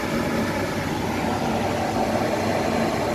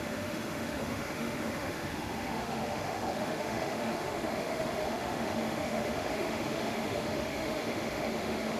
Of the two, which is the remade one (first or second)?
second